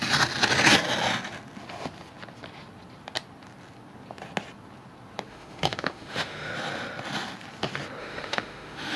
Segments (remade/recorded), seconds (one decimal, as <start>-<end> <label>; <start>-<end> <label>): 0.0-5.3 recorded; 5.3-6.5 remade; 6.5-8.0 recorded; 8.0-9.0 remade

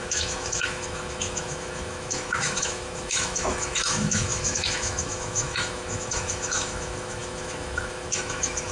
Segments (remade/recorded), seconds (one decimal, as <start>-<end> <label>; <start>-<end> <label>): 0.0-8.7 remade

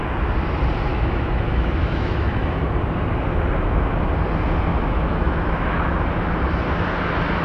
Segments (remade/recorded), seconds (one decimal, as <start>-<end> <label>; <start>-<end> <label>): 0.0-0.9 recorded; 0.9-2.6 remade; 2.6-4.7 recorded; 4.7-5.9 remade; 5.9-7.4 recorded

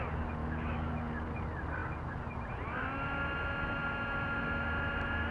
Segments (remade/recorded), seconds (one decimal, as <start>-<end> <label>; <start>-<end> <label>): 0.0-0.4 recorded; 0.4-0.9 remade; 0.9-5.3 recorded

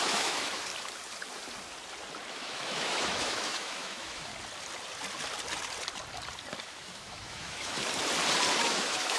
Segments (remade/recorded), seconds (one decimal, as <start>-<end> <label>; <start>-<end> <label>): 0.0-0.7 remade; 0.7-2.3 recorded; 2.3-4.3 remade; 4.3-6.6 recorded; 6.6-7.8 remade; 7.8-8.6 recorded; 8.6-9.2 remade

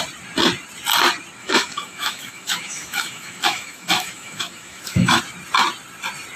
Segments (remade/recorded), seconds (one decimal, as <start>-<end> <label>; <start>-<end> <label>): 0.0-1.4 recorded; 1.4-5.2 remade; 5.2-6.4 recorded